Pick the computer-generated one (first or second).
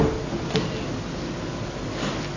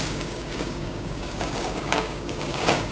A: second